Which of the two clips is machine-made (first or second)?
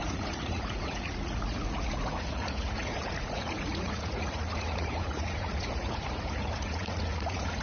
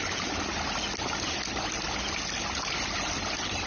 first